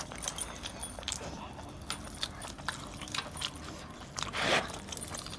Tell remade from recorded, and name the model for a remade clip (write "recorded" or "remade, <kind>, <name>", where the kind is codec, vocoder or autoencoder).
recorded